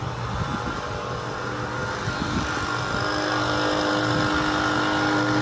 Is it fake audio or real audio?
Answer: real